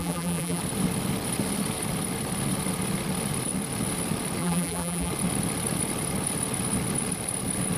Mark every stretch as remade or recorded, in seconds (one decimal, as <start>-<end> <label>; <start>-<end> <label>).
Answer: 0.0-0.6 remade; 0.6-4.4 recorded; 4.4-5.1 remade; 5.1-7.8 recorded